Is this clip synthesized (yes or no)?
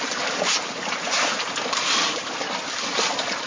no